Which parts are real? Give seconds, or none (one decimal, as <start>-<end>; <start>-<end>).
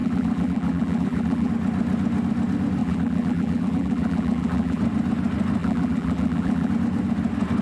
1.5-2.8; 4.8-5.6; 6.7-7.6